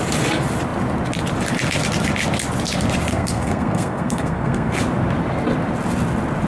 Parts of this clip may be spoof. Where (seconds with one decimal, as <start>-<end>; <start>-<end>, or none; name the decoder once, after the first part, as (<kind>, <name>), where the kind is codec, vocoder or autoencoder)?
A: 3.1-4.7 (codec, SNAC)